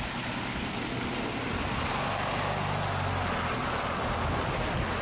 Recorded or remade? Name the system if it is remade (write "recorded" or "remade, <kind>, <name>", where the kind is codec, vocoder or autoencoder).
recorded